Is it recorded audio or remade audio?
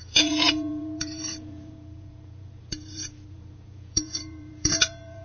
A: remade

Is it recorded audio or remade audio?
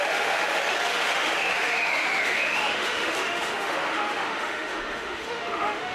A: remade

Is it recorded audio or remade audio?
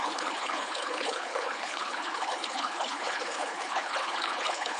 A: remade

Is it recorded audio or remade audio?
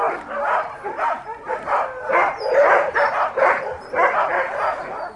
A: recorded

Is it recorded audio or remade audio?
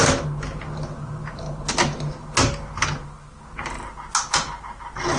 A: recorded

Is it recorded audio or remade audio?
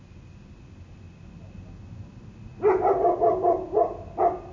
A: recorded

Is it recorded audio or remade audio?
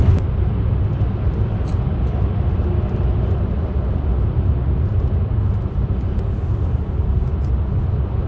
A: recorded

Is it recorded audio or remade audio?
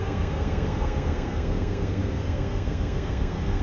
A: remade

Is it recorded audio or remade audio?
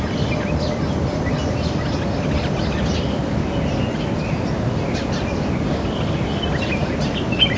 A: recorded